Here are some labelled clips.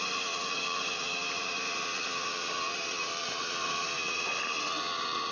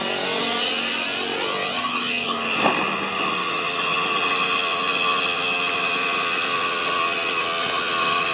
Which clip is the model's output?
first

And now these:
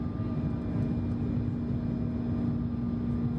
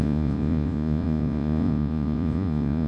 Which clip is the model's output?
second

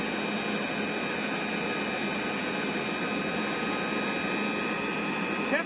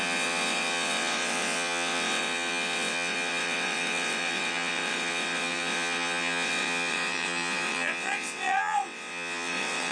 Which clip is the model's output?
second